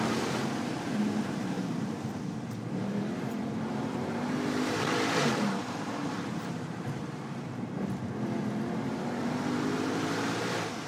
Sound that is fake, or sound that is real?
fake